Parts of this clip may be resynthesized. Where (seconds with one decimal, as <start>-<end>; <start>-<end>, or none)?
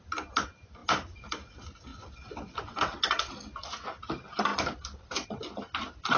1.9-3.3